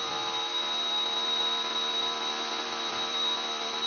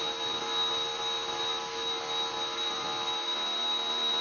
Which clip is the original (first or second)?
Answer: second